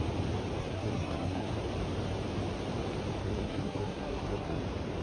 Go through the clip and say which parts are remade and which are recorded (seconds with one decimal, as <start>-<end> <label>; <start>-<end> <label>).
0.0-0.6 recorded; 0.6-1.5 remade; 1.5-3.2 recorded; 3.2-4.6 remade; 4.6-5.0 recorded